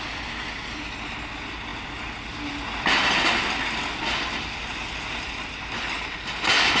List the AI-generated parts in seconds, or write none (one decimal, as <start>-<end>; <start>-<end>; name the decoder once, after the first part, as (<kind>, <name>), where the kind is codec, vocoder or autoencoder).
none